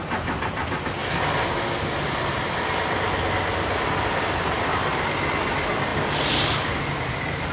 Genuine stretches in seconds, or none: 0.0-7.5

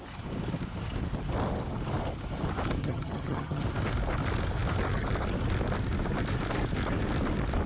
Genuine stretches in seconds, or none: 0.0-2.8; 3.6-7.7

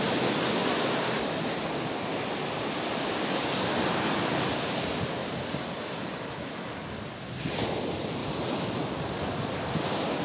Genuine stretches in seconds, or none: 0.0-10.2

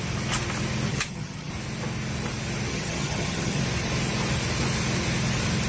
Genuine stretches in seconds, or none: 0.0-0.9; 1.5-2.7; 3.6-5.7

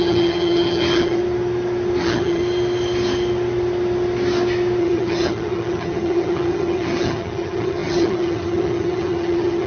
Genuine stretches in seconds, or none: 1.2-2.0; 2.4-4.8

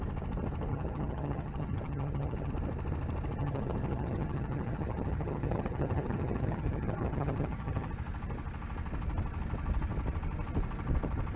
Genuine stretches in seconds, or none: 0.0-0.7; 2.5-3.4; 7.9-11.4

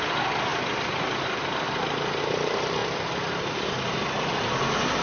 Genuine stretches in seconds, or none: 0.0-5.0

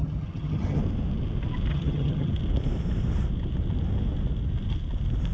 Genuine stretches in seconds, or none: 0.8-1.7; 2.3-5.3